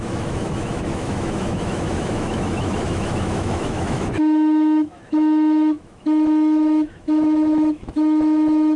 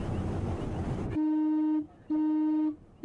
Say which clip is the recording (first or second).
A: second